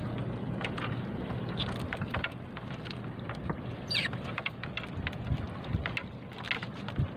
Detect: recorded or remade recorded